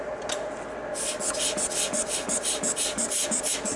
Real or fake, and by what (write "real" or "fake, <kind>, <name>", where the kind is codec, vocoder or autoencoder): real